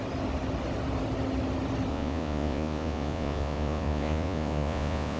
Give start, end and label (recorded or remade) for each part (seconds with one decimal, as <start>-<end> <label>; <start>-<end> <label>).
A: 0.0-1.9 recorded; 1.9-5.2 remade